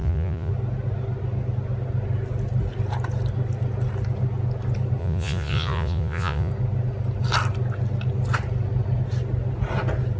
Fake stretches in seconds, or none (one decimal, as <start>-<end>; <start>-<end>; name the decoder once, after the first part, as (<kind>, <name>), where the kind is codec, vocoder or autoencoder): 0.0-0.5 (vocoder, Vocos); 5.0-6.5